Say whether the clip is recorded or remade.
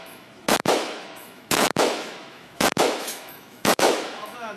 remade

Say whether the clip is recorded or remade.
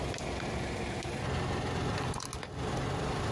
recorded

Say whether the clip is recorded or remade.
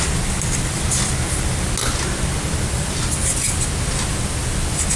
recorded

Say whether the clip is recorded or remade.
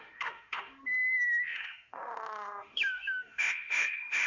remade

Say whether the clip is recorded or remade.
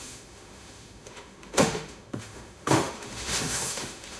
remade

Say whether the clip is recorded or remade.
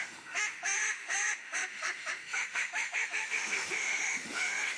remade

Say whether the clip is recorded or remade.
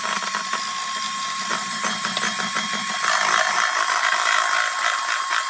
recorded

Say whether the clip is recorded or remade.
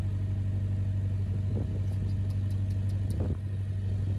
recorded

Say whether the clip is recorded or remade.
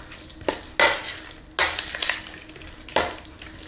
recorded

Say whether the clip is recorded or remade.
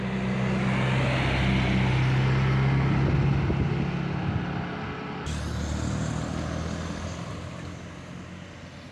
recorded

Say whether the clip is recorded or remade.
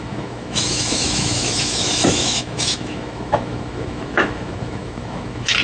remade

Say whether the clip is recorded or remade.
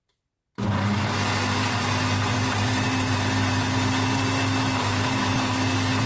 recorded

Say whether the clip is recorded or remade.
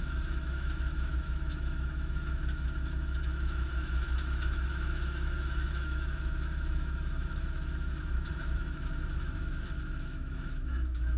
remade